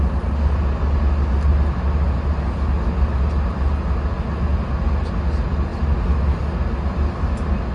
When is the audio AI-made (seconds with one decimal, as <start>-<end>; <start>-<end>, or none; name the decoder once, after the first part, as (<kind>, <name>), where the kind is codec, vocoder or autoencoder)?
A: none